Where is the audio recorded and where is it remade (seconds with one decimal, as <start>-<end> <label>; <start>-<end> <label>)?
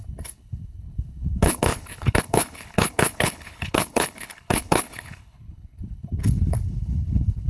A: 0.0-7.5 remade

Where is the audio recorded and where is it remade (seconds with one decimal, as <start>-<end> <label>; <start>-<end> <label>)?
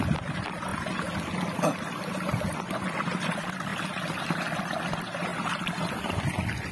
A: 0.0-6.7 recorded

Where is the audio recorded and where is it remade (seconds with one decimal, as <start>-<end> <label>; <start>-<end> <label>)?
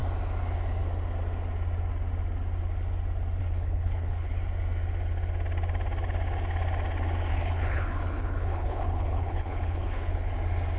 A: 0.0-3.4 recorded; 3.4-4.3 remade; 4.3-7.3 recorded; 7.3-10.3 remade; 10.3-10.8 recorded